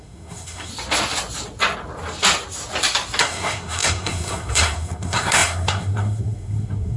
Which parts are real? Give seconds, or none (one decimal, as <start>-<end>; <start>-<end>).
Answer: 0.7-3.2